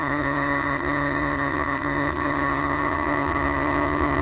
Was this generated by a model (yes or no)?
yes